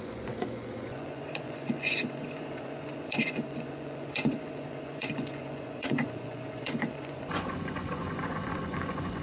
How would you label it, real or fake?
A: fake